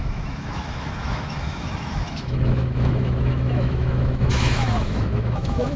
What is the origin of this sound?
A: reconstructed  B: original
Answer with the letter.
A